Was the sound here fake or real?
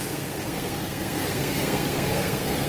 fake